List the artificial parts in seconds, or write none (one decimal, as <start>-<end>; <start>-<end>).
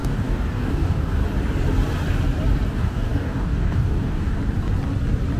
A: 0.0-1.2; 2.7-4.4